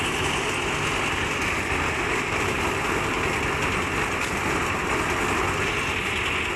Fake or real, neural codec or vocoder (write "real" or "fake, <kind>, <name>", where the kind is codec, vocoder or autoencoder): real